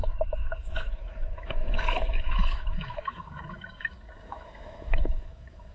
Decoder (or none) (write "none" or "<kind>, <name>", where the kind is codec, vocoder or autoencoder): autoencoder, DAC-VAE